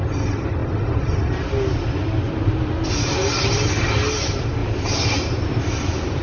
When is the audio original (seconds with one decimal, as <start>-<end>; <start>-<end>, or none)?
0.0-4.6